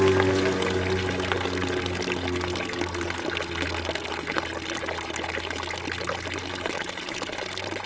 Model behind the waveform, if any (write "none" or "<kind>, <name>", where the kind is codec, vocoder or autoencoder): none